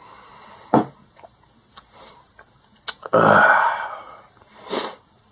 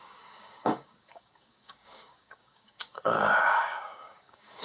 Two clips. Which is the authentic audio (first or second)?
first